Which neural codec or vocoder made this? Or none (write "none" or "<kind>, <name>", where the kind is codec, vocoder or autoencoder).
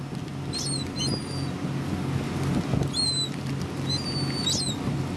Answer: none